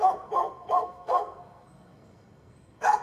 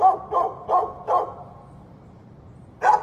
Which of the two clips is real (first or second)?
second